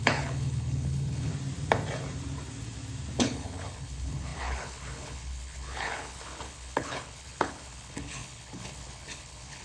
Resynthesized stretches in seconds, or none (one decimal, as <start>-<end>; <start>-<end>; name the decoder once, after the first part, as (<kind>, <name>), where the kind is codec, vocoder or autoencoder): 0.0-1.3 (codec, HILCodec); 3.2-9.6